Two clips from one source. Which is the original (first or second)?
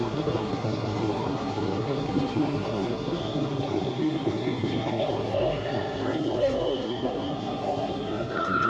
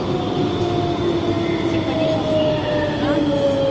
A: second